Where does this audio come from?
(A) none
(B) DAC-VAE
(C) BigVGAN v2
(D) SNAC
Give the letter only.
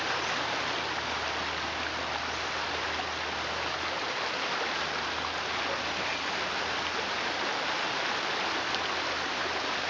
A